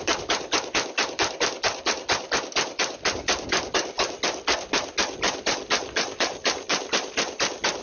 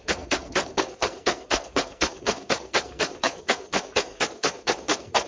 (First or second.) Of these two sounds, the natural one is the first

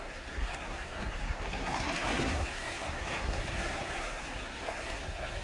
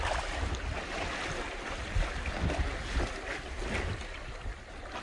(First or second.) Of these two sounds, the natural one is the second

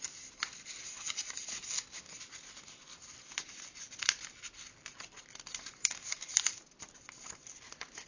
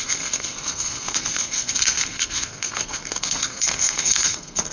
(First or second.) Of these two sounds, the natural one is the first